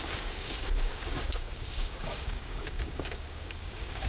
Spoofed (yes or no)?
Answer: yes